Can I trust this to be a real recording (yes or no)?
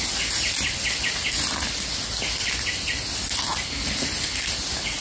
yes